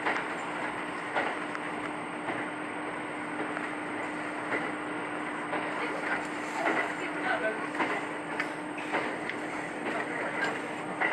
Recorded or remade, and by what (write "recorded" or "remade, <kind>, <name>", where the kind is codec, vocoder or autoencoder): recorded